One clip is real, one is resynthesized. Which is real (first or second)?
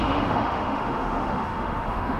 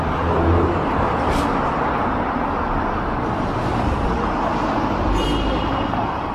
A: second